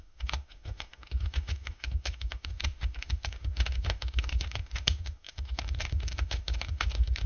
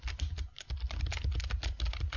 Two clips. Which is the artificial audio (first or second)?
first